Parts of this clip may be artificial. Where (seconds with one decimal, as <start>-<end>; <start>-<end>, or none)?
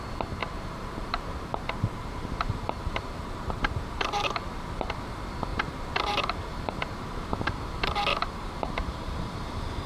0.4-4.7; 5.5-6.7; 8.1-9.9